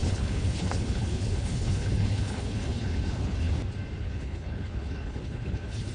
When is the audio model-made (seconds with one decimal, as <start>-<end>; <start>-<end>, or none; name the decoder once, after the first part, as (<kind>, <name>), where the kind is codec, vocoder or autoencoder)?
0.0-3.5 (codec, HILCodec); 4.0-5.9